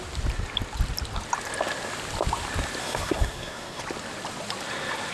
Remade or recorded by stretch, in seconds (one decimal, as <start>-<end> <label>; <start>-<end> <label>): 0.0-2.8 recorded; 2.8-3.8 remade; 3.8-5.1 recorded